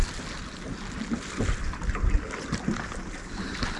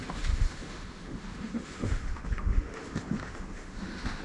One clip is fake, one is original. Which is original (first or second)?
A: first